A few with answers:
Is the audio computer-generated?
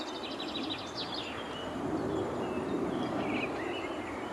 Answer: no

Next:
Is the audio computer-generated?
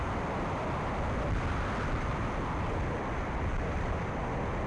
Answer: no